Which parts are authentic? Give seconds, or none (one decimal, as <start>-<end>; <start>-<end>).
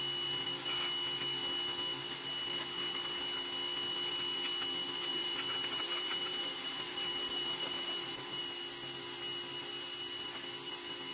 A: 0.0-5.1; 8.4-11.1